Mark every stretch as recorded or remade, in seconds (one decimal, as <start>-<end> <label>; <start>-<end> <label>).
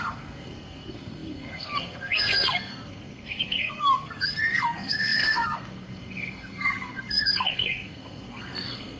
0.0-9.0 remade